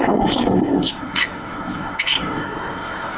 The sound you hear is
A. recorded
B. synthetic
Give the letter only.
B